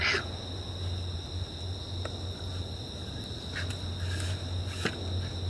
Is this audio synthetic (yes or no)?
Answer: no